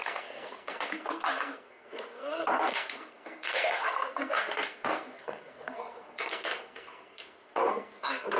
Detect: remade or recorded remade